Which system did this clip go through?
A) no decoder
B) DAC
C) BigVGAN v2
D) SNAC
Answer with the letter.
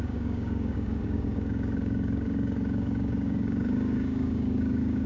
B